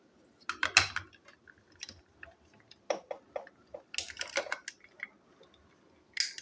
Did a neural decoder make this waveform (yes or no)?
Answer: no